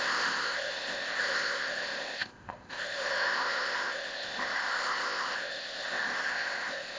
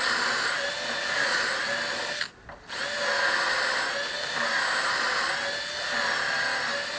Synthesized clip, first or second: first